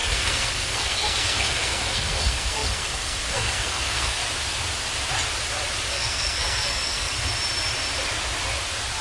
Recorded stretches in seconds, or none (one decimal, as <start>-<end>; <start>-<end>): 4.2-5.9; 7.1-9.0